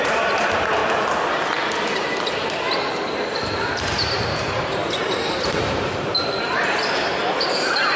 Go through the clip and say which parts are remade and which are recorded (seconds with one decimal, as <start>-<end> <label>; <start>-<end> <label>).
0.0-0.8 remade; 0.8-2.9 recorded; 2.9-7.2 remade; 7.2-8.0 recorded

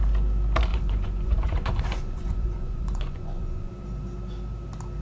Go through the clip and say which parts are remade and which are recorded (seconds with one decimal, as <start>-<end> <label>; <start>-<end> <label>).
0.0-0.7 recorded; 0.7-3.7 remade; 3.7-5.0 recorded

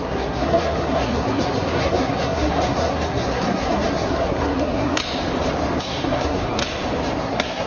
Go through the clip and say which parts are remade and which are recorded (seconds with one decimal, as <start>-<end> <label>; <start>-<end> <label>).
0.0-5.0 remade; 5.0-5.8 recorded; 5.8-6.6 remade; 6.6-7.2 recorded; 7.2-7.7 remade

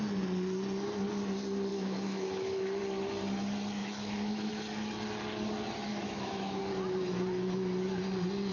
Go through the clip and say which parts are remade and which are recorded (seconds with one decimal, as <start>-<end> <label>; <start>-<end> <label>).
0.0-1.7 recorded; 1.7-2.8 remade; 2.8-3.8 recorded; 3.8-4.5 remade; 4.5-5.9 recorded; 5.9-6.6 remade; 6.6-8.5 recorded

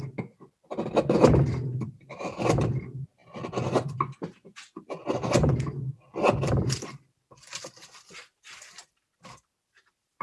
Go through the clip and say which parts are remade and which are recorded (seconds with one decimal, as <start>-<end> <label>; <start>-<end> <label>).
0.0-3.2 remade; 3.2-6.2 recorded; 6.2-10.2 remade